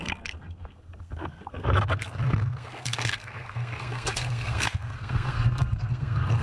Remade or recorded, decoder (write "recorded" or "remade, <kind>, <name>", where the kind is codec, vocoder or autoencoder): remade, codec, SNAC